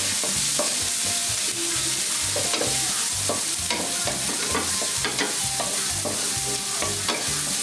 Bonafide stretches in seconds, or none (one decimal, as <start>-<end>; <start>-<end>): 0.0-7.6